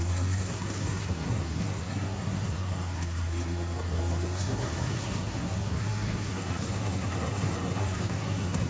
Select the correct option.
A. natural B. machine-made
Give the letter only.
B